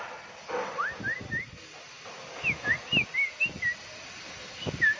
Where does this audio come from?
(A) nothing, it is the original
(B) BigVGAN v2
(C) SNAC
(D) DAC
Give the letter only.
A